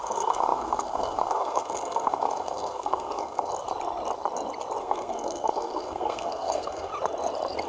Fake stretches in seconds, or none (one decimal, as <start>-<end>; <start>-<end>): 0.0-3.5; 4.8-6.9